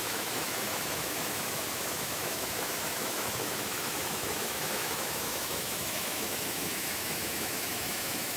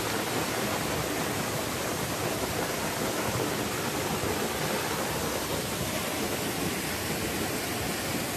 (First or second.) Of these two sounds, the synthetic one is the first